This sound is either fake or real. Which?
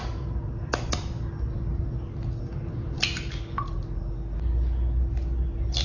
real